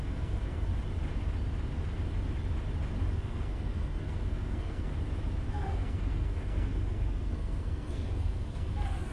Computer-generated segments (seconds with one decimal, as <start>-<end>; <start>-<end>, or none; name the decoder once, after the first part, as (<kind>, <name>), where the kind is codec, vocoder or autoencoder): 0.0-0.7 (codec, SNAC); 3.1-4.9; 5.5-9.1